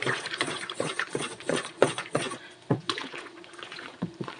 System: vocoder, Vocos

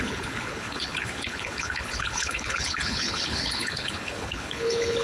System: codec, HILCodec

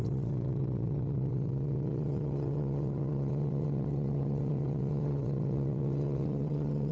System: vocoder, WaveNeXt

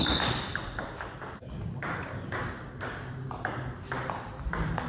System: vocoder, BigVGAN v2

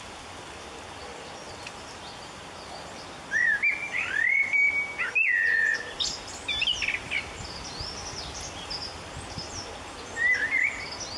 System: none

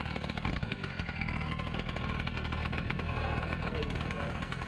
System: codec, SNAC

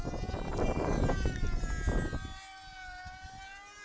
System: none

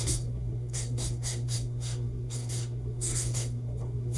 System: codec, SNAC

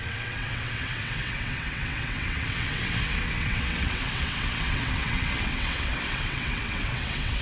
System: vocoder, WaveNeXt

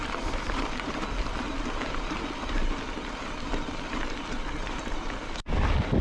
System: vocoder, BigVGAN v2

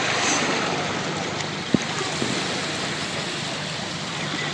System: none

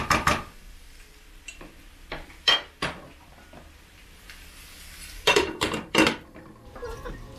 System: vocoder, BigVGAN v2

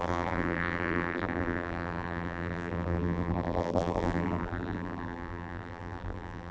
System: vocoder, BigVGAN v2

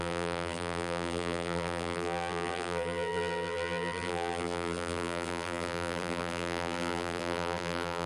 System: vocoder, BigVGAN v2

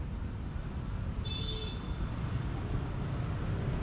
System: none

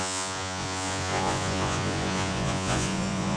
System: vocoder, Vocos